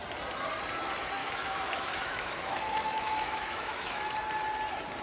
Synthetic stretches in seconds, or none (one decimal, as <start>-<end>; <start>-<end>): 1.2-4.2